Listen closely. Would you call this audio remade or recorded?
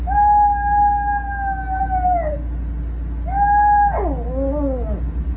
recorded